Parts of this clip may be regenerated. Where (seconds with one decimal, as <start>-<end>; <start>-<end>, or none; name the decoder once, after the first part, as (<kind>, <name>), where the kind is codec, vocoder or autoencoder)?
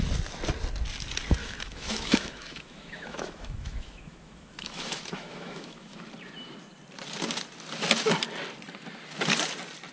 1.4-6.0 (autoencoder, DAC-VAE)